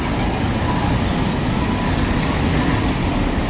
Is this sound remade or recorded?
recorded